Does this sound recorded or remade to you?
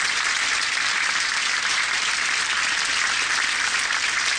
recorded